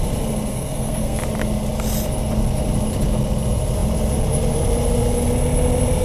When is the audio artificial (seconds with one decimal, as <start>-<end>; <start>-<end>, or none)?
0.5-1.2